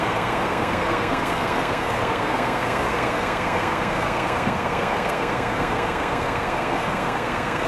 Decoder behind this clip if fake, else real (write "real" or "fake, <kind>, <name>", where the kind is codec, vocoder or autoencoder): fake, codec, SNAC